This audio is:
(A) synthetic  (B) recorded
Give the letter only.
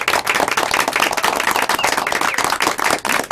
B